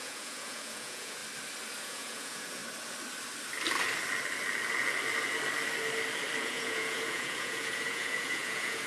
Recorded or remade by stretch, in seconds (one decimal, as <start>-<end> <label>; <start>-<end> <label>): 0.0-1.2 remade; 1.2-1.8 recorded; 1.8-2.6 remade; 2.6-6.4 recorded; 6.4-8.9 remade